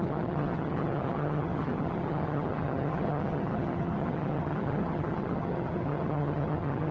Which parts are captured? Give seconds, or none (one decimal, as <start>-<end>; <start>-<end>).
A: none